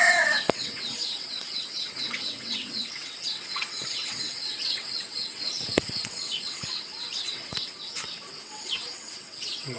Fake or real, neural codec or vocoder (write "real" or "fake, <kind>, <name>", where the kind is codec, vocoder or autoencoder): fake, vocoder, WaveNeXt